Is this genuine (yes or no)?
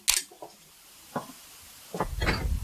yes